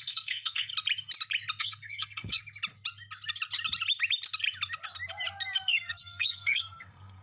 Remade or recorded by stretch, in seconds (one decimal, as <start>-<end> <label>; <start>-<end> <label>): 0.0-0.7 remade; 0.7-1.6 recorded; 1.6-2.4 remade; 2.4-5.6 recorded; 5.6-7.2 remade